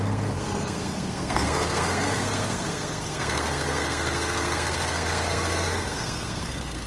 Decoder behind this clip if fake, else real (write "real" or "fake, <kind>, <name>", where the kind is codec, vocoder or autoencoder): fake, codec, SNAC